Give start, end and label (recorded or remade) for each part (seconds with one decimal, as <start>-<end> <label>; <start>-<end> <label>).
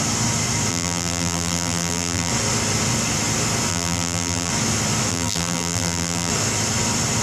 0.0-0.7 recorded; 0.7-2.3 remade; 2.3-3.7 recorded; 3.7-4.5 remade; 4.5-5.1 recorded; 5.1-6.3 remade; 6.3-7.2 recorded